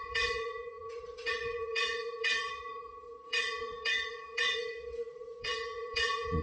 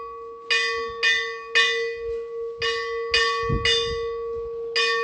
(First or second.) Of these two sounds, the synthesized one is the first